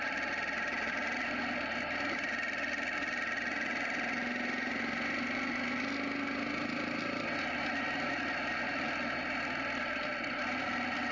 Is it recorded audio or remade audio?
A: recorded